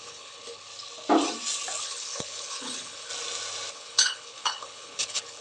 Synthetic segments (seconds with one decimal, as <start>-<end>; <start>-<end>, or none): 0.0-0.7; 1.8-3.1; 3.7-5.4